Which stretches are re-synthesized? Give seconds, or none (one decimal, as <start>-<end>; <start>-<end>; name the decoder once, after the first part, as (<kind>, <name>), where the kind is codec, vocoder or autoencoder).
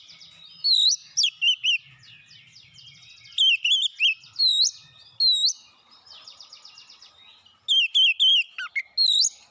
none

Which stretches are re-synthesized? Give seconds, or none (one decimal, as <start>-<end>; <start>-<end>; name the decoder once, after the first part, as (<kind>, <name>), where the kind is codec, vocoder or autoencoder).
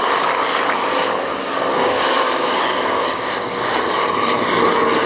1.3-3.8 (codec, DAC)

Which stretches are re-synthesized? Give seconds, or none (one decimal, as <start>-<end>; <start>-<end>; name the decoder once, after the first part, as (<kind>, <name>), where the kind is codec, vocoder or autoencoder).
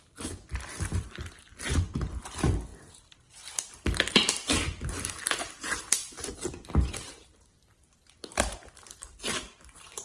0.0-10.0 (vocoder, BigVGAN v2)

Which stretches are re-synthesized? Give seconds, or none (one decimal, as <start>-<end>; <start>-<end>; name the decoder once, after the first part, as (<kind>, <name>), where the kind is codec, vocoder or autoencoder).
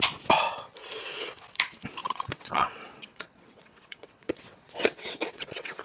2.0-5.8 (vocoder, WaveNeXt)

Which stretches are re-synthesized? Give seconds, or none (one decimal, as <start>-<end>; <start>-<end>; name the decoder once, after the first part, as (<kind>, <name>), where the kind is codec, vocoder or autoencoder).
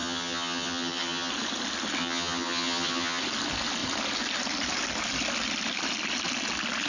0.0-1.3 (vocoder, HiFi-GAN); 2.0-3.2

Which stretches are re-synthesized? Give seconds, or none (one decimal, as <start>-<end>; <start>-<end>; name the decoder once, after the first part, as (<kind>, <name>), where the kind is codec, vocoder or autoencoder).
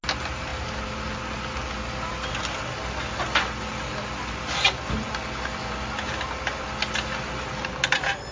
none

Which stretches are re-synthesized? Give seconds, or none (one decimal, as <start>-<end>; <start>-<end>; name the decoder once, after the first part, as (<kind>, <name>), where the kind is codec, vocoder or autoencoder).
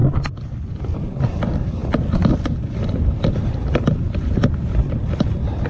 none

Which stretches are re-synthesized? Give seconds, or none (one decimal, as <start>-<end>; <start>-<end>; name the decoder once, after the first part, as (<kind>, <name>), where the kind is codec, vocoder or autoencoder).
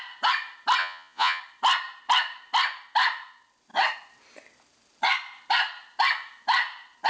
0.8-1.4 (vocoder, Vocos)